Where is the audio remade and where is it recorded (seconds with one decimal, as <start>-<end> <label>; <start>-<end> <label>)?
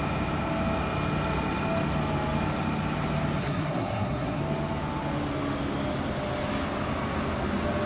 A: 0.0-3.4 recorded; 3.4-4.4 remade; 4.4-7.9 recorded